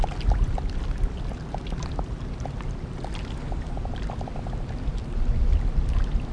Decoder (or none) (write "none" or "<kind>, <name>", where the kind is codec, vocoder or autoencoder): none